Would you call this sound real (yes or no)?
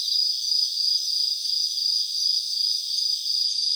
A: yes